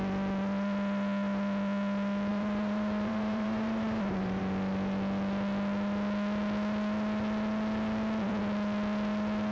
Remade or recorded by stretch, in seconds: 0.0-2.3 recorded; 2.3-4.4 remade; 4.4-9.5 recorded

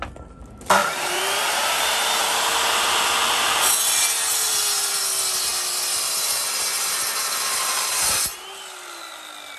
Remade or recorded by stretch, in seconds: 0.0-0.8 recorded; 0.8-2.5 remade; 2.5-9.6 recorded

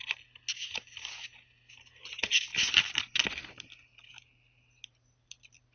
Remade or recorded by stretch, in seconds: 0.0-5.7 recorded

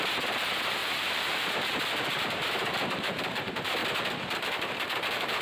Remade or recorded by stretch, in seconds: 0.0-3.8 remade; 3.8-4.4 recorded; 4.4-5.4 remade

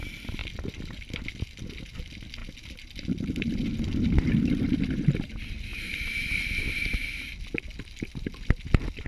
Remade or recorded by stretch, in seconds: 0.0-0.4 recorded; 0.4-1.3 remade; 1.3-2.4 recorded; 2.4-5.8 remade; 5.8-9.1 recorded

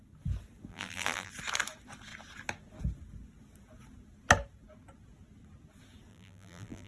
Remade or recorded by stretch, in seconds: 0.0-0.7 recorded; 0.7-1.3 remade; 1.3-6.1 recorded; 6.1-6.9 remade

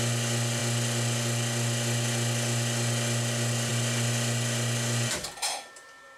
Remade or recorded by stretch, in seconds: 0.0-6.2 recorded

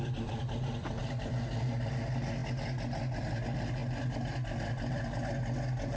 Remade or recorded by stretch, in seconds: 0.0-2.4 remade; 2.4-3.2 recorded; 3.2-3.8 remade; 3.8-6.0 recorded